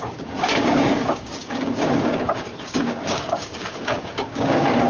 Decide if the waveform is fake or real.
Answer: fake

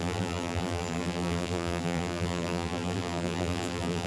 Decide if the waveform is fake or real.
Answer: fake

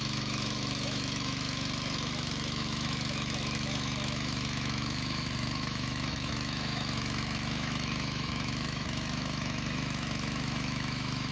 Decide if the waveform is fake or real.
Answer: fake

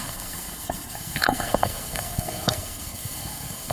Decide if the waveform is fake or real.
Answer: fake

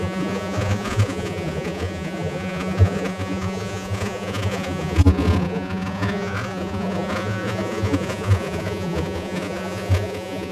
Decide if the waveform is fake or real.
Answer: fake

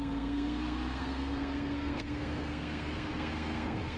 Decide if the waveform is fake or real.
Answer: fake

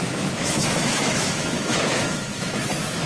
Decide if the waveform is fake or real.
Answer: fake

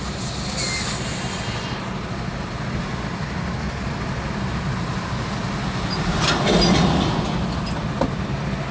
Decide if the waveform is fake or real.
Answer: real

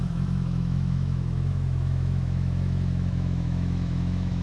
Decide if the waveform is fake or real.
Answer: fake